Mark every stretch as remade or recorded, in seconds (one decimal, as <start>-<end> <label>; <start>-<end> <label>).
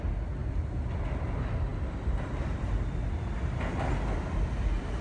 0.0-5.0 recorded